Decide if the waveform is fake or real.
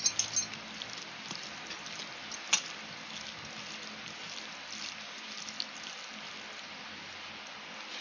real